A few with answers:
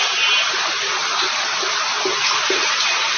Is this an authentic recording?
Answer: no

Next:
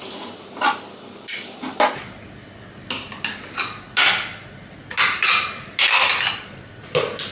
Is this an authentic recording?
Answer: yes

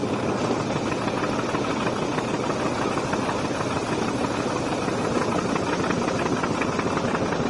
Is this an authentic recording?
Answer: yes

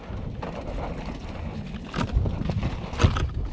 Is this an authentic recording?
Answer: yes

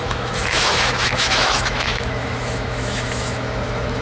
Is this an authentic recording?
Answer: no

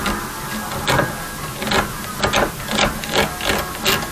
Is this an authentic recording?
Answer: yes